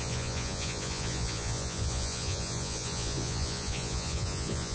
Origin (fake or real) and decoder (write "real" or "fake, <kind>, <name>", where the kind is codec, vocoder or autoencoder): fake, vocoder, Vocos